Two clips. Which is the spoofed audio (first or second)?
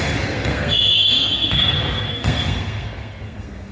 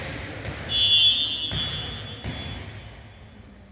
first